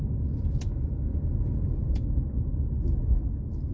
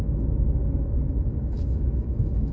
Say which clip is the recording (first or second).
first